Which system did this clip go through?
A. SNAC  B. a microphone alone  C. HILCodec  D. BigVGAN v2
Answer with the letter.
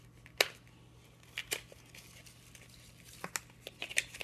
B